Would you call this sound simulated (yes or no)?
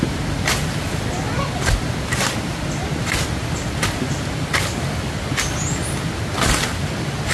no